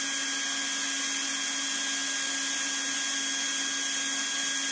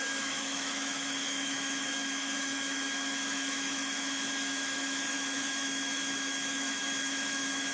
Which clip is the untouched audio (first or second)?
first